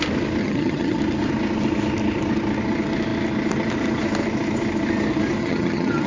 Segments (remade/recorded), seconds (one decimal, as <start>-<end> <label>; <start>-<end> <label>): 0.0-0.4 recorded; 0.4-1.0 remade; 1.0-5.4 recorded; 5.4-6.1 remade